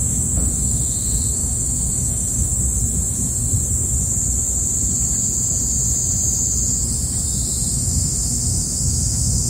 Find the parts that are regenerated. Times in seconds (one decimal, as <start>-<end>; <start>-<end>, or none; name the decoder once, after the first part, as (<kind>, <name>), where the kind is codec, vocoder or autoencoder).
0.0-2.5 (autoencoder, DAC-VAE); 7.7-9.5